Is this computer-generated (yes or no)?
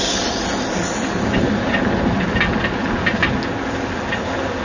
no